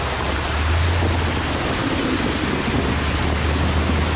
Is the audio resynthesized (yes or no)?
no